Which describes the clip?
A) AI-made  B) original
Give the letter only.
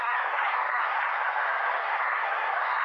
A